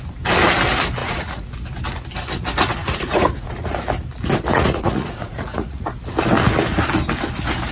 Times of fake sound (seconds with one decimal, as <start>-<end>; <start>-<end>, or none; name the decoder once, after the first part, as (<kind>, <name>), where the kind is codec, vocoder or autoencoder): 1.0-1.5 (vocoder, Vocos); 2.8-3.8; 4.5-5.9

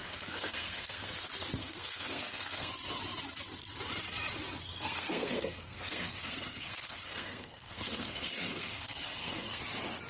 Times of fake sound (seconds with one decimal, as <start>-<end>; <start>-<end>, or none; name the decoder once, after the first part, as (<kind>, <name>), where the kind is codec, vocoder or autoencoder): 0.0-1.1 (codec, SNAC); 1.6-2.7; 4.7-9.6